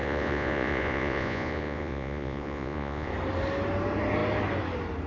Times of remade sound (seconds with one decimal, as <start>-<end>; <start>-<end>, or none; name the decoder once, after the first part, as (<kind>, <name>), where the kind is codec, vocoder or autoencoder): 0.0-3.1 (vocoder, Vocos)